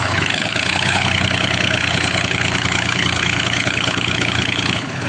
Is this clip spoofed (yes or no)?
yes